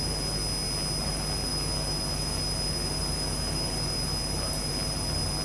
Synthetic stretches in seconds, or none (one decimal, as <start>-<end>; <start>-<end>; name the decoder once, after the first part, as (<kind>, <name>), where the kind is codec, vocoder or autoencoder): 0.0-0.4 (vocoder, BigVGAN v2); 1.0-5.4